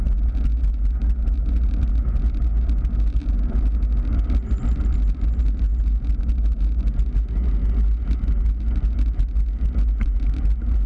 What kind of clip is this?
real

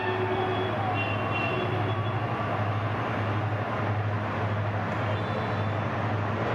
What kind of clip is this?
real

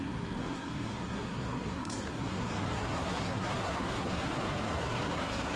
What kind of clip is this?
fake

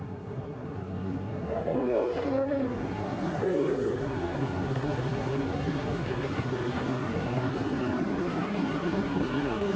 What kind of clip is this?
fake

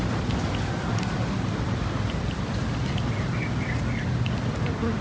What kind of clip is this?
real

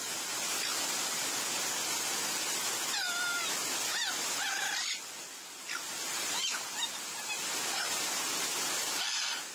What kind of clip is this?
real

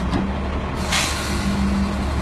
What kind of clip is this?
real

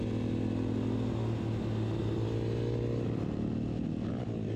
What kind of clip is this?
real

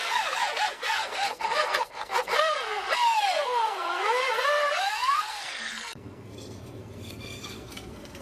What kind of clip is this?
fake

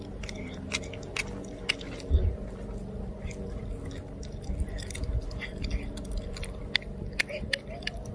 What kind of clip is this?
real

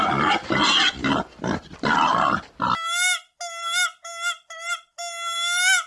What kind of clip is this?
real